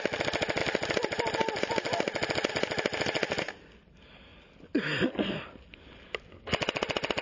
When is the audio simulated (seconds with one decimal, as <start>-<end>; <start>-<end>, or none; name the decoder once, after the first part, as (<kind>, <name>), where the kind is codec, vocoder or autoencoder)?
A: none